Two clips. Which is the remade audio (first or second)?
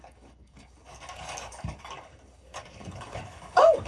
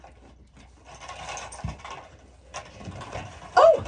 first